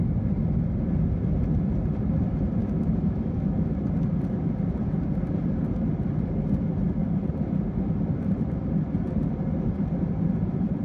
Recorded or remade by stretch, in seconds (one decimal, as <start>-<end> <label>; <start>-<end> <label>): 0.0-2.6 recorded; 2.6-3.8 remade; 3.8-10.8 recorded